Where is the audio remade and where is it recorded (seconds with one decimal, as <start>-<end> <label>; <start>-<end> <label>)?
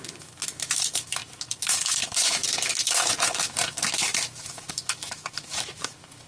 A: 0.0-6.3 remade